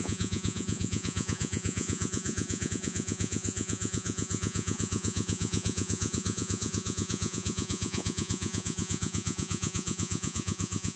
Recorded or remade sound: remade